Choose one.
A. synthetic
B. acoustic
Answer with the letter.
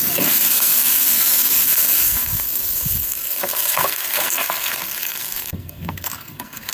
A